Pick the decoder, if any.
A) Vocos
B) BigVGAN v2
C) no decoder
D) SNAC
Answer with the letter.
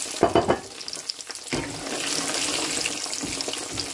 C